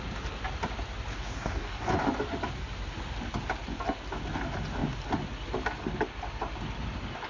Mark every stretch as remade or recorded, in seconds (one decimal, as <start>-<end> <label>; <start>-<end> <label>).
0.0-1.1 recorded; 1.1-1.9 remade; 1.9-7.3 recorded